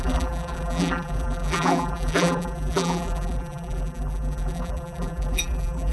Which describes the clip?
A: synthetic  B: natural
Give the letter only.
A